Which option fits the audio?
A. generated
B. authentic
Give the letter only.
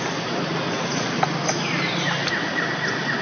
B